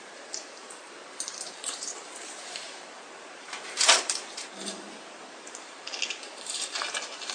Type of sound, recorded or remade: remade